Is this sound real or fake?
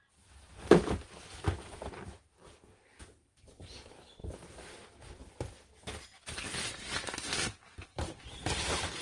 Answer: real